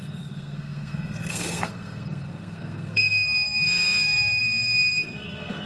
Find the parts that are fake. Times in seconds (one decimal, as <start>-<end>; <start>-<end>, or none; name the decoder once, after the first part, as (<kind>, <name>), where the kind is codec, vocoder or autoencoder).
0.0-5.7 (codec, SNAC)